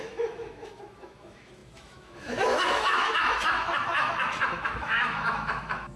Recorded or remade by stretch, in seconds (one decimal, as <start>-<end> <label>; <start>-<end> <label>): 0.0-6.0 remade